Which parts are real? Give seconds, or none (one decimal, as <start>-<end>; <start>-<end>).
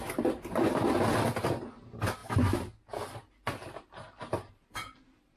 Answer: 0.0-5.4